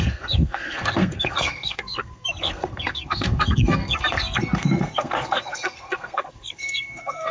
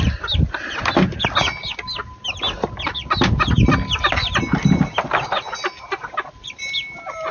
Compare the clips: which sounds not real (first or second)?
first